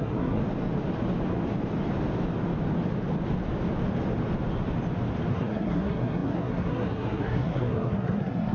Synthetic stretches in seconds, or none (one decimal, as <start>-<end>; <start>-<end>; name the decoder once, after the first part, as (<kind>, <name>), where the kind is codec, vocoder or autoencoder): 0.0-0.4 (codec, SNAC); 5.3-8.5